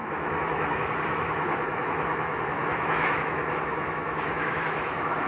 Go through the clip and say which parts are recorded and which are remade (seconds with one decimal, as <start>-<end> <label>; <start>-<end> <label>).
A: 0.0-5.3 remade